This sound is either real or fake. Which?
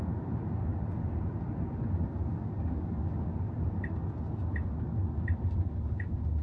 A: real